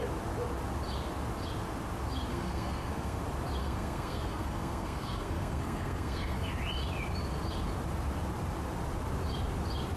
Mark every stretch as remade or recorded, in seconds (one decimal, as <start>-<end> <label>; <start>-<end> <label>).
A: 0.0-2.3 recorded; 2.3-3.2 remade; 3.2-3.6 recorded; 3.6-6.5 remade; 6.5-10.0 recorded